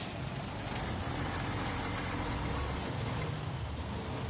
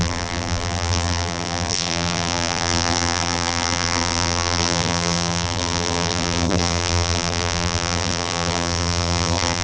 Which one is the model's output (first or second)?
second